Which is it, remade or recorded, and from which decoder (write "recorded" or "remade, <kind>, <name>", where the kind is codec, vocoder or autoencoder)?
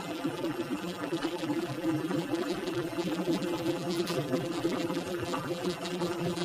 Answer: remade, vocoder, BigVGAN v2